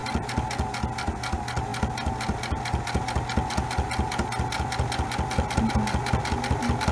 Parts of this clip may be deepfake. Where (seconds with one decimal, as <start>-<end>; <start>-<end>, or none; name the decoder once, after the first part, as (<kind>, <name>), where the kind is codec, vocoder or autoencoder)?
none